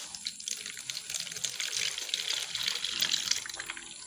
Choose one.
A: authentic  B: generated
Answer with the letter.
A